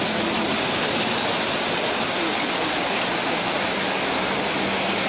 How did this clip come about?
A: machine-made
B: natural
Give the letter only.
B